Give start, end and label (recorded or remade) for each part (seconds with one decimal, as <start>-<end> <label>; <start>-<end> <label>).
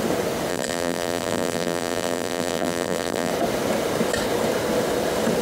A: 0.0-0.5 recorded; 0.5-3.3 remade; 3.3-5.4 recorded